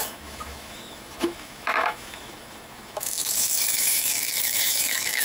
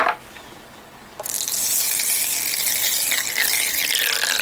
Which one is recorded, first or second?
second